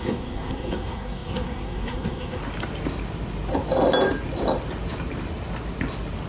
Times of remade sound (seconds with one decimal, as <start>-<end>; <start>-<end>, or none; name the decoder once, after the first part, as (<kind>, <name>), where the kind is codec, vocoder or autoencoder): 0.0-2.4 (codec, SNAC)